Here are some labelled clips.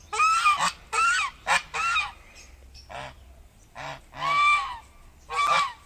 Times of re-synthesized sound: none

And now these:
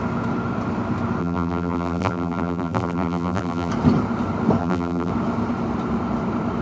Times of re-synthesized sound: 1.2-3.7; 4.6-5.1

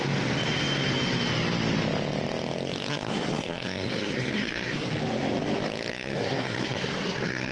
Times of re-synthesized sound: 2.9-4.9; 5.9-7.5

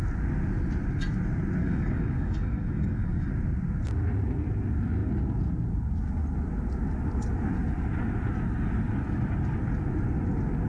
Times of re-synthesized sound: 1.6-3.3

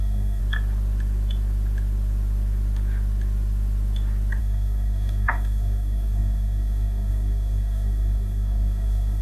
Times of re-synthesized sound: 0.0-0.4; 4.4-9.2

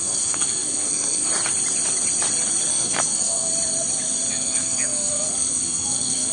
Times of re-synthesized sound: 0.0-1.3; 2.7-3.5; 4.3-6.3